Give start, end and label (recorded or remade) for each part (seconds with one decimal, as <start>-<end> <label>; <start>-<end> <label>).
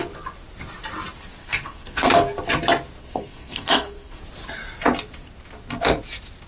0.0-1.4 recorded; 1.4-2.1 remade; 2.1-3.0 recorded; 3.0-4.2 remade; 4.2-6.5 recorded